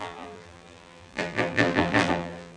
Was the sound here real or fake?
fake